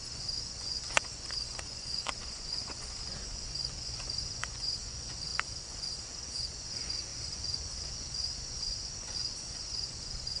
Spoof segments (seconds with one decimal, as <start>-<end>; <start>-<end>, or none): 0.0-10.4